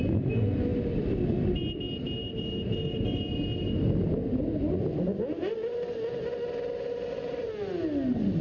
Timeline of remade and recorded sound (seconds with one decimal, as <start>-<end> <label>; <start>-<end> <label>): 0.0-8.4 recorded